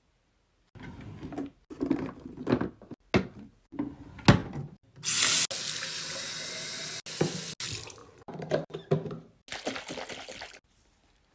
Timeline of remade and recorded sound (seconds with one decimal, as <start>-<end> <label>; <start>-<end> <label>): 0.0-8.0 recorded; 8.0-9.4 remade; 9.4-11.3 recorded